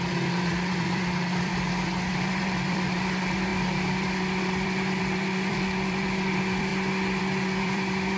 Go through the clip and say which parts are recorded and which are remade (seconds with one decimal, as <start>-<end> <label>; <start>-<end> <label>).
0.0-1.5 remade; 1.5-2.1 recorded; 2.1-6.7 remade; 6.7-7.2 recorded; 7.2-8.2 remade